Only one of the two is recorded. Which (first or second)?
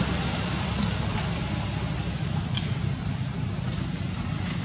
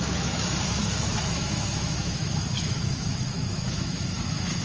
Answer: first